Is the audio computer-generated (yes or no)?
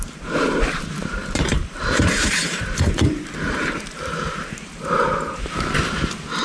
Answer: yes